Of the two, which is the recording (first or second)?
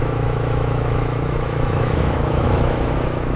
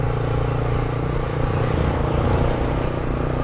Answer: second